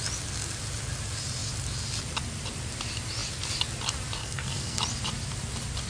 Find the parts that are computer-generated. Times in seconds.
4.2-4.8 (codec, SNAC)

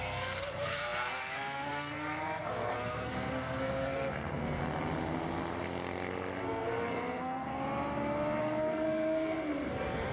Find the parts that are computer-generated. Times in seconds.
0.0-4.6 (codec, SNAC); 6.4-7.5; 8.4-10.1

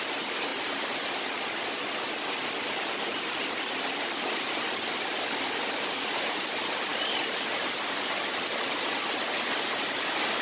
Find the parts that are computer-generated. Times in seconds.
none